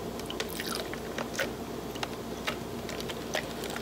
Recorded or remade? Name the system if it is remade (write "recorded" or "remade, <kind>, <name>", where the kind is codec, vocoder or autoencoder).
recorded